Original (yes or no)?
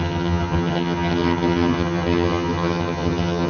no